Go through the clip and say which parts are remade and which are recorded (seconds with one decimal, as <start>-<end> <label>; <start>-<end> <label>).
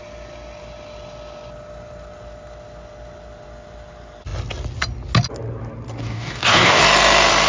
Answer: 0.0-6.0 recorded; 6.0-6.8 remade; 6.8-7.5 recorded